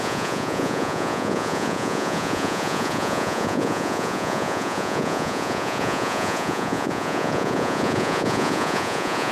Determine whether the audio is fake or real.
fake